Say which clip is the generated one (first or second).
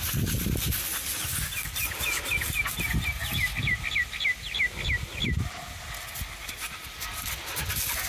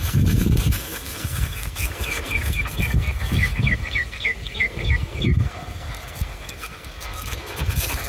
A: second